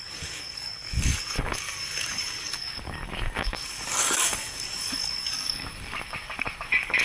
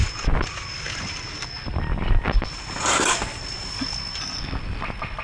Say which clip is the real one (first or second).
second